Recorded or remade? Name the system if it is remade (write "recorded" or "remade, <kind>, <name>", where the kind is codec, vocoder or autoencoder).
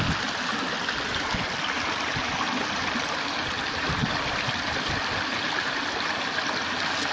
recorded